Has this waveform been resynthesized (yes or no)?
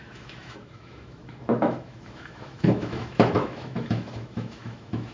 yes